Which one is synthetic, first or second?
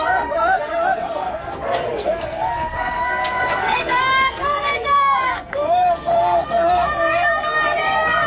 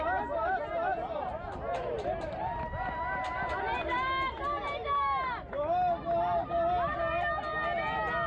first